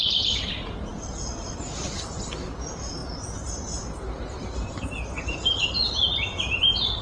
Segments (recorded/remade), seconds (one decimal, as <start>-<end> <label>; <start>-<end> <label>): 0.0-7.0 recorded